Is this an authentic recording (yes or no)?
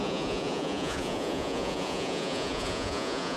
no